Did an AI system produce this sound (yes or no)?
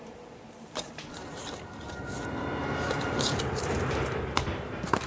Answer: yes